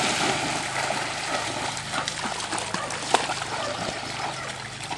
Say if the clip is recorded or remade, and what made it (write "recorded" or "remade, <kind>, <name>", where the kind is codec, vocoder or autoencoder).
recorded